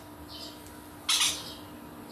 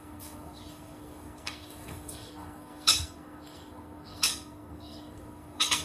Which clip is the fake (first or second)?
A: second